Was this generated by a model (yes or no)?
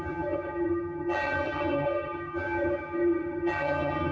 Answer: yes